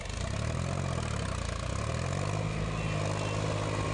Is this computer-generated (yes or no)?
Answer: no